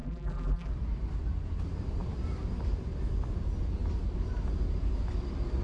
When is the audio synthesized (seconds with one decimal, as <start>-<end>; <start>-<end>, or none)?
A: 0.0-0.7